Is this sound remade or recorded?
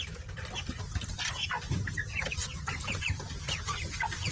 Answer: remade